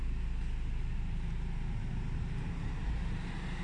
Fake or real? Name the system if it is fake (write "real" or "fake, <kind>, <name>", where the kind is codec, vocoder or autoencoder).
real